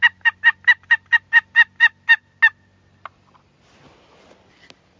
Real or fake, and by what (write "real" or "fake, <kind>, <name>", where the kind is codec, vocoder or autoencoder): real